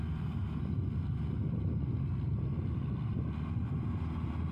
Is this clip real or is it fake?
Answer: real